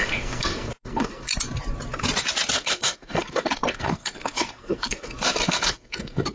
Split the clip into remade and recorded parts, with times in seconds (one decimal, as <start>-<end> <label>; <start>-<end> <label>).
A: 0.0-1.3 remade; 1.3-2.5 recorded; 2.5-6.3 remade